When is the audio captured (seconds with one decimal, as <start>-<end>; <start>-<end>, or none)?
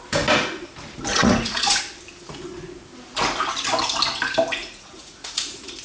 0.0-1.1; 1.8-4.6